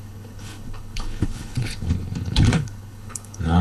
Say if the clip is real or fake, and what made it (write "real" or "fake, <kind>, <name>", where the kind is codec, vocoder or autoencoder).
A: fake, codec, HILCodec